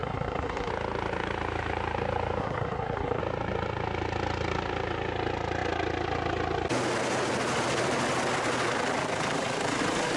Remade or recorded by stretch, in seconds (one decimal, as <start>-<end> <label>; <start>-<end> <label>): 0.0-0.7 remade; 0.7-2.4 recorded; 2.4-3.2 remade; 3.2-10.2 recorded